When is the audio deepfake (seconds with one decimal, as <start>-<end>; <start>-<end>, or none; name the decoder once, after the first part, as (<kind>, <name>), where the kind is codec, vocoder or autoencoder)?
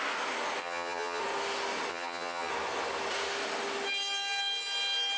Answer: 0.6-1.2 (vocoder, HiFi-GAN); 1.9-2.5